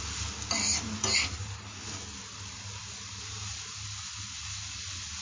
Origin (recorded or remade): recorded